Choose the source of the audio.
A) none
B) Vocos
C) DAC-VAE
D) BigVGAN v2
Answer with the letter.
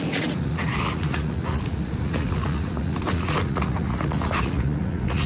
B